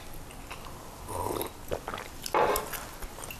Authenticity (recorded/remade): recorded